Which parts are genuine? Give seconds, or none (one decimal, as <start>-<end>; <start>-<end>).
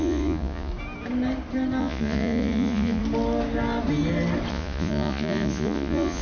0.7-1.8; 3.0-4.5